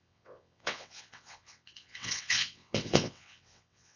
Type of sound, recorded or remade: remade